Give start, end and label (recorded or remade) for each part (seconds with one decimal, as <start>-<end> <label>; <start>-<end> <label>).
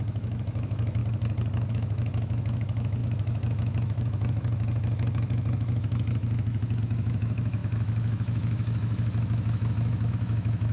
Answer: 0.0-1.0 remade; 1.0-1.7 recorded; 1.7-10.7 remade